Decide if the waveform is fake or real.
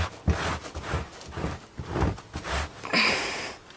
real